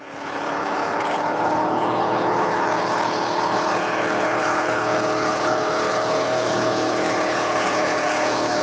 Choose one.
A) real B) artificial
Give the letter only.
B